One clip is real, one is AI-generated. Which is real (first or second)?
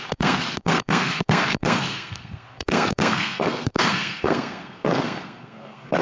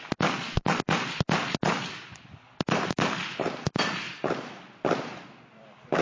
second